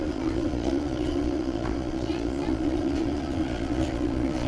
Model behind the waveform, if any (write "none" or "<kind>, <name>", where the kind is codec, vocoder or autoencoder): vocoder, Vocos